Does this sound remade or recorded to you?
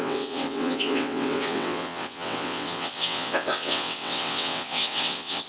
remade